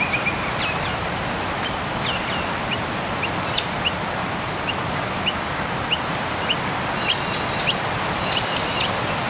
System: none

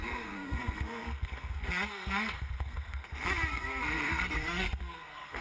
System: codec, SNAC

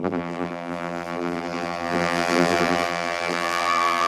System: vocoder, BigVGAN v2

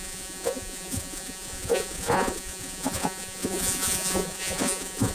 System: vocoder, Vocos